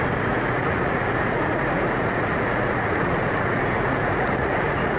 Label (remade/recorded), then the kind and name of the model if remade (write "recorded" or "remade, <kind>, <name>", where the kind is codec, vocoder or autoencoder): remade, vocoder, Vocos